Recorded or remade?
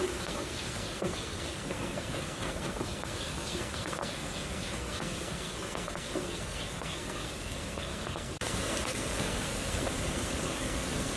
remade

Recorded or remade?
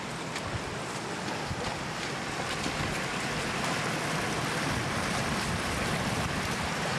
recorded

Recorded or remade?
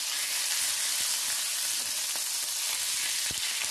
recorded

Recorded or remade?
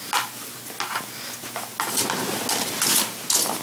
recorded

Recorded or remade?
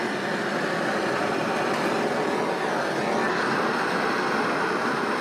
recorded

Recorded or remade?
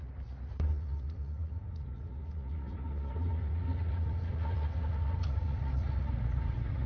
remade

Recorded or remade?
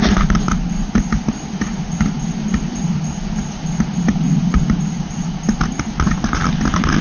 recorded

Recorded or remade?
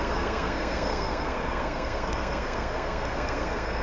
remade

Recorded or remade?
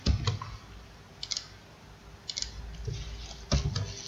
recorded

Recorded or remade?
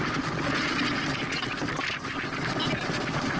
recorded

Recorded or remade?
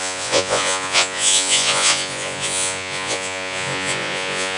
remade